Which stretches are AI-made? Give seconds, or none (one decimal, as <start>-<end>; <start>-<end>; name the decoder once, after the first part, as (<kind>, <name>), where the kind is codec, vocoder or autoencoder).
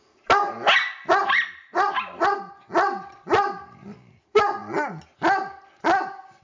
none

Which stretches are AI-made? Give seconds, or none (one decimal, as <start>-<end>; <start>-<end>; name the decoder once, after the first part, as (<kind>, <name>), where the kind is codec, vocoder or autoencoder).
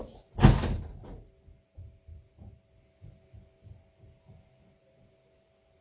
none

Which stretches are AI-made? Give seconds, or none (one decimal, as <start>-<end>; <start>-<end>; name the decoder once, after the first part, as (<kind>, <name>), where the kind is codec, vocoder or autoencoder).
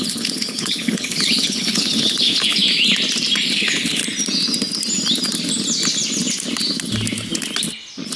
0.0-2.6 (codec, HILCodec); 3.5-4.0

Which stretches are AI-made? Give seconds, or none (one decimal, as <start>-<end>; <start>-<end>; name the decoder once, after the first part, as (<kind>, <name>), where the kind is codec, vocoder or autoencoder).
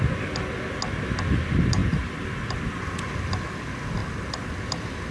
none